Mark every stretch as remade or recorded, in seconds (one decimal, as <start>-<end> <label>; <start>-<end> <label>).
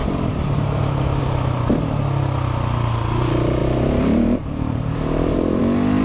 0.0-1.2 remade; 1.2-3.6 recorded; 3.6-5.6 remade; 5.6-6.0 recorded